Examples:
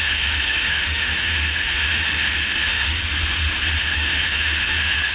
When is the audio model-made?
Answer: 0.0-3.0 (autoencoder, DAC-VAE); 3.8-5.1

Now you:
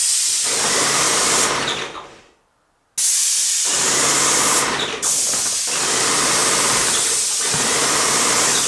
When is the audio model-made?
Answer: none

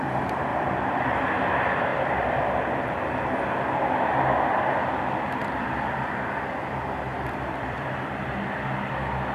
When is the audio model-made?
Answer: 0.5-1.2 (vocoder, BigVGAN v2); 1.9-4.4; 5.4-8.3

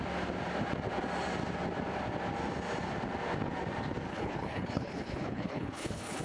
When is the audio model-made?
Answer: 4.1-6.2 (codec, HILCodec)

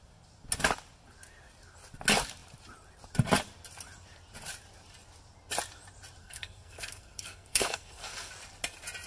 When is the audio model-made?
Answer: 6.2-8.3 (codec, SNAC)

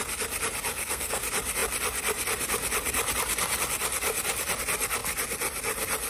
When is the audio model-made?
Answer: 0.7-1.2 (codec, SNAC)

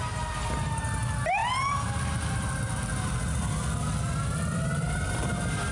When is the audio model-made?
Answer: none

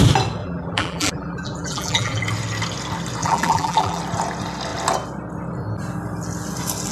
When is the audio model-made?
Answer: 0.4-2.2 (vocoder, BigVGAN v2); 3.2-4.0